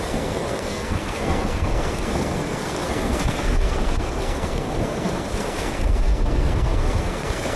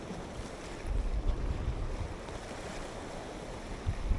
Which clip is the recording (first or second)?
second